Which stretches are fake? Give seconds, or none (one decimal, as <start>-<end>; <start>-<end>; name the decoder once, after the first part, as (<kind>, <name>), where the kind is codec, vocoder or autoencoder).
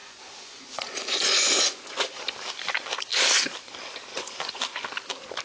0.0-2.2 (vocoder, Vocos); 4.1-4.6